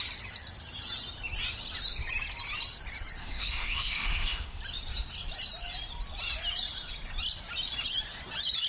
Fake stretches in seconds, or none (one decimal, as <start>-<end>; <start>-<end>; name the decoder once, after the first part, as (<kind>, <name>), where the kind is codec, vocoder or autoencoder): 3.2-4.6 (autoencoder, DAC-VAE)